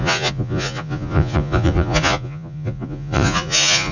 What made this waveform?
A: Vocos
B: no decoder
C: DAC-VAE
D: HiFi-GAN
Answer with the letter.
A